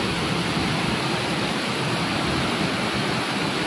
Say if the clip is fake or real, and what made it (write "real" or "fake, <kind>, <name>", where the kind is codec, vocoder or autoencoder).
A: fake, vocoder, BigVGAN v2